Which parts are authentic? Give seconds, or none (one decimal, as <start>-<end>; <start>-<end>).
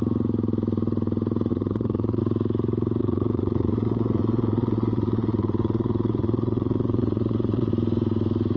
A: 0.0-1.5; 2.2-3.0; 7.7-8.6